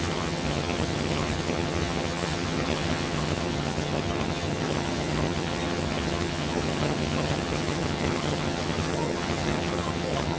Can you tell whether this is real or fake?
fake